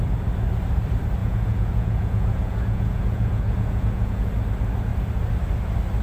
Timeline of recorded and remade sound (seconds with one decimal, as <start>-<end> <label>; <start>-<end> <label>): 0.0-1.2 recorded; 1.2-4.3 remade; 4.3-6.0 recorded